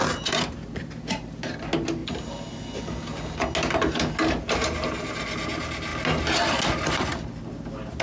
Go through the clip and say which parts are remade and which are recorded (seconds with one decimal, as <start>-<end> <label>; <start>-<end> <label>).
0.0-8.0 recorded